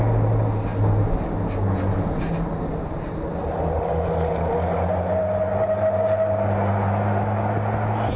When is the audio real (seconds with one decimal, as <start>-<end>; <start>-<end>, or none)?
0.0-2.7; 4.5-8.2